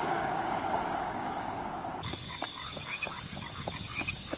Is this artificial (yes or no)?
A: yes